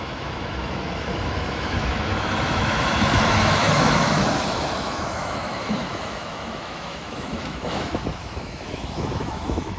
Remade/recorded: remade